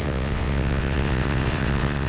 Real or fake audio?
fake